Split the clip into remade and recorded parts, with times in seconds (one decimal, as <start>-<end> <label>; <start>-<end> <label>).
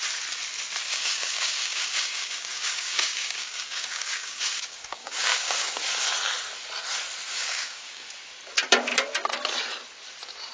0.0-0.8 recorded; 0.8-5.8 remade; 5.8-7.3 recorded; 7.3-8.1 remade; 8.1-10.5 recorded